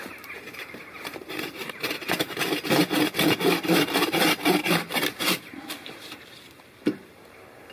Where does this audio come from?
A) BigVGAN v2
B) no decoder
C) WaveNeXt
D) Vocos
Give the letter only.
A